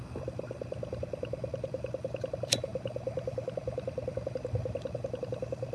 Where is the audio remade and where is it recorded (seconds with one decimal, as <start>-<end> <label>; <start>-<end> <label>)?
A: 0.0-5.7 recorded